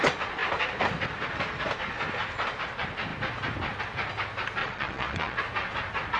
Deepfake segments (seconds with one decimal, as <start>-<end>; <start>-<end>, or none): 4.6-5.4